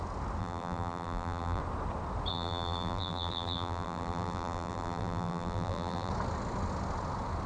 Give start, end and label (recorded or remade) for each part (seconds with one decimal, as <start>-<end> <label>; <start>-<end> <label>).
0.0-0.4 recorded; 0.4-1.6 remade; 1.6-2.3 recorded; 2.3-6.1 remade; 6.1-7.5 recorded